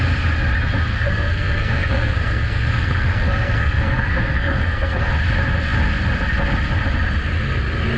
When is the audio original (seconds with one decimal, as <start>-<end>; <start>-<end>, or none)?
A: 0.0-0.9; 5.1-8.0